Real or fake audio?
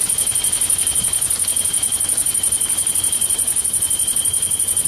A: real